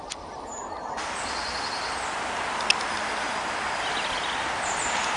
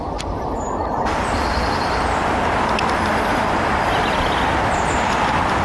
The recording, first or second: first